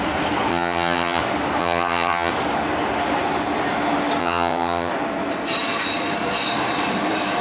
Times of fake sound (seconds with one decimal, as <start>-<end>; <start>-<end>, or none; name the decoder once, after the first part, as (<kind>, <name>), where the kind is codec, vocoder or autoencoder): 0.5-1.2 (vocoder, HiFi-GAN); 1.6-2.3; 4.2-4.9